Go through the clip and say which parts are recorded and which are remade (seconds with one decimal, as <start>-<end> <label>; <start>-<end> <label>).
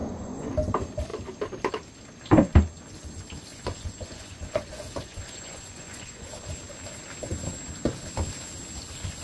0.0-0.5 remade; 0.5-3.5 recorded; 3.5-6.3 remade; 6.3-9.2 recorded